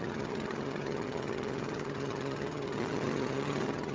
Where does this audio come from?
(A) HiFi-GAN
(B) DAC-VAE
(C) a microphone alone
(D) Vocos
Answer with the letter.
A